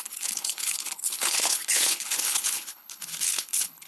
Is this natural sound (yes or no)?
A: no